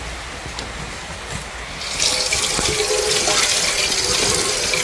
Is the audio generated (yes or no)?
no